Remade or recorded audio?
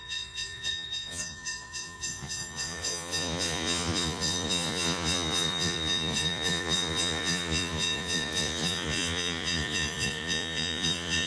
remade